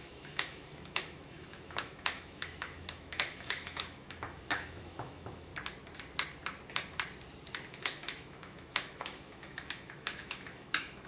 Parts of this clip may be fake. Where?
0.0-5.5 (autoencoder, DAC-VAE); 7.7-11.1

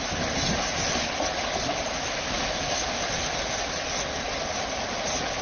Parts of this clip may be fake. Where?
1.9-2.8 (autoencoder, DAC-VAE)

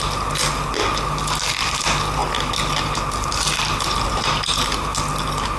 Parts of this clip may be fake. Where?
none

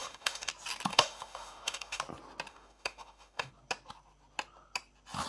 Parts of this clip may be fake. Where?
0.0-0.5 (autoencoder, DAC-VAE); 0.9-2.0; 2.5-3.5

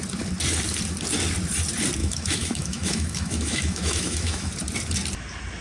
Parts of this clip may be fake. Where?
2.0-4.5 (autoencoder, DAC-VAE)